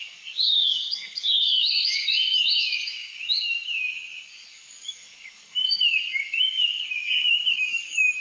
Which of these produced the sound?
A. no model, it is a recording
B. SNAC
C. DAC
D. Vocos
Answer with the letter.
C